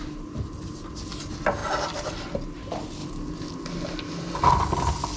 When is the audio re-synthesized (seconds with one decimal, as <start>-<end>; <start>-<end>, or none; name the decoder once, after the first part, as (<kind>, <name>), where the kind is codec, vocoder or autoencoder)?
none